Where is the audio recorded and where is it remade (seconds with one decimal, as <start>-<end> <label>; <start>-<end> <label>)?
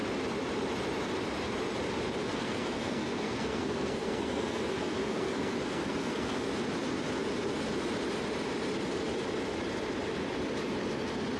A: 0.0-2.3 recorded; 2.3-6.5 remade; 6.5-11.4 recorded